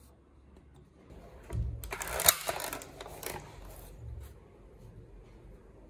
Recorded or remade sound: recorded